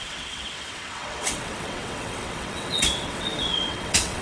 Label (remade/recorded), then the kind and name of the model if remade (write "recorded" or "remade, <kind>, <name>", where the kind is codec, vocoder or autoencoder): remade, vocoder, WaveNeXt